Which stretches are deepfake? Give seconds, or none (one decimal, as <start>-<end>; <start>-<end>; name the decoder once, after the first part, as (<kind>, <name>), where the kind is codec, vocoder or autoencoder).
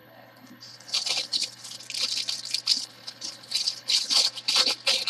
0.0-1.8 (codec, HILCodec); 2.7-4.3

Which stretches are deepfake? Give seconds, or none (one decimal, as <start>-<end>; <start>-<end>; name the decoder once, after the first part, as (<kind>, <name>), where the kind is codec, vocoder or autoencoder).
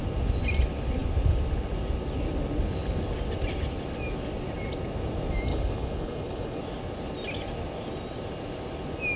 5.5-6.6 (codec, HILCodec)